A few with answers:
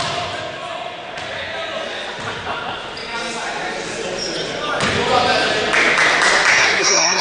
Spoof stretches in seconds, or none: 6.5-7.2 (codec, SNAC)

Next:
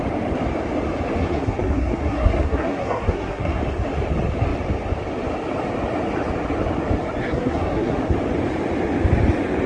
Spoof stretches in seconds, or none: 1.2-3.6 (codec, SNAC); 7.2-8.0

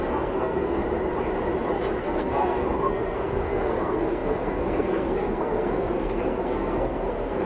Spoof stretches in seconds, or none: 0.0-0.8 (codec, SNAC); 2.0-7.5

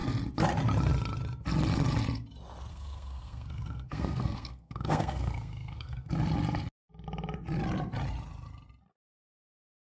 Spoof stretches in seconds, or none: 2.7-6.1 (codec, SNAC)

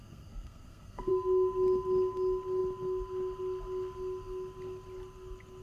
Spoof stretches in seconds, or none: 0.0-1.1 (codec, SNAC)